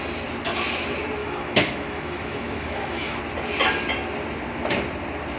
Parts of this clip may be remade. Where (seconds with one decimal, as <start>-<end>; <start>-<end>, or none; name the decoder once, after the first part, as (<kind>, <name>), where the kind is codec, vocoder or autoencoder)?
1.2-3.2 (autoencoder, DAC-VAE)